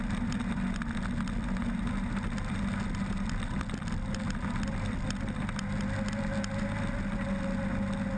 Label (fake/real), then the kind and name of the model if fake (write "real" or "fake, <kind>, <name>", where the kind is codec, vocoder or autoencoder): real